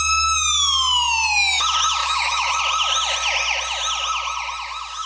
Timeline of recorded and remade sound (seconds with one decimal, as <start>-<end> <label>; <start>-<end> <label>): 0.0-2.0 recorded; 2.0-2.6 remade; 2.6-5.1 recorded